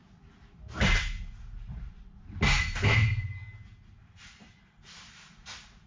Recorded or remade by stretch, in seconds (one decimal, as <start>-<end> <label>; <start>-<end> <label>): 0.0-5.9 recorded